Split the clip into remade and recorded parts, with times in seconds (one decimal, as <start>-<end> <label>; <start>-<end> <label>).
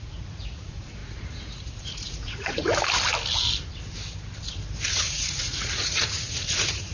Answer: 0.0-2.7 remade; 2.7-4.9 recorded; 4.9-6.9 remade